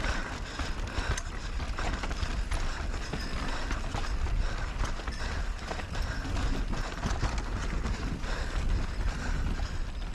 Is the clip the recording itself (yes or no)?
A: yes